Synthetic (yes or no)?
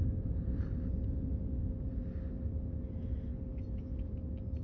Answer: no